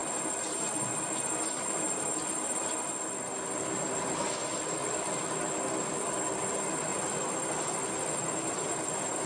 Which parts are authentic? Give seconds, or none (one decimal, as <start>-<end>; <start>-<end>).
0.0-9.3